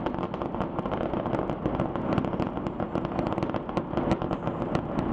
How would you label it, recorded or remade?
recorded